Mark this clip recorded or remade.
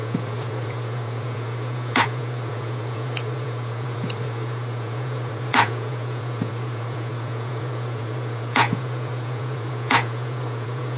remade